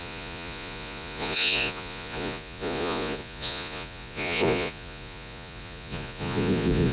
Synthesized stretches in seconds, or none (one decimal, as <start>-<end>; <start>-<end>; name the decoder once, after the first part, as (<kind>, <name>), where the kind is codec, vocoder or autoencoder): 0.0-6.9 (vocoder, Vocos)